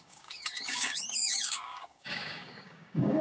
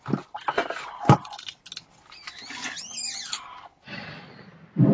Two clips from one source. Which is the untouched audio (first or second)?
second